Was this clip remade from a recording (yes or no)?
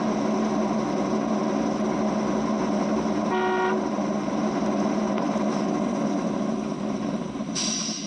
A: no